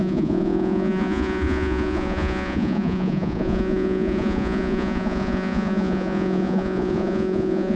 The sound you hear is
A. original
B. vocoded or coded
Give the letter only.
B